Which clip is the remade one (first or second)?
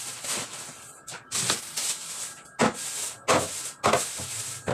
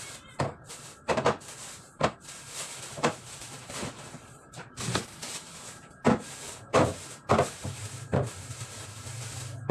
second